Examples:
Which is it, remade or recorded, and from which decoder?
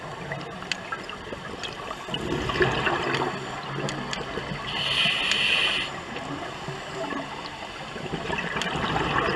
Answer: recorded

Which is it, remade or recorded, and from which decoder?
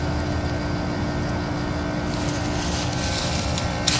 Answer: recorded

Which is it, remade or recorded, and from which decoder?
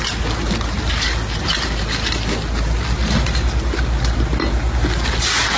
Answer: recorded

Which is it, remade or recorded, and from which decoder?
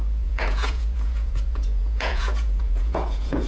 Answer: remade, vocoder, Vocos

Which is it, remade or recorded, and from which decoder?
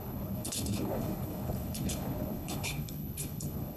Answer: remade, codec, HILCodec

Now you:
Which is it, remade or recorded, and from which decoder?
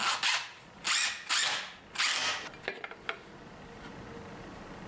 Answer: recorded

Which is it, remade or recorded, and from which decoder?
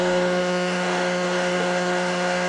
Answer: remade, autoencoder, DAC-VAE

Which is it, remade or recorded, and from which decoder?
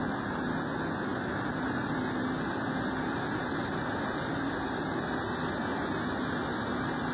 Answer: recorded